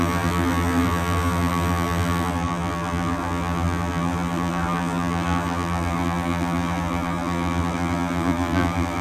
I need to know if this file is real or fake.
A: fake